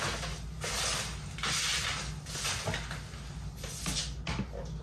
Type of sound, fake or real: real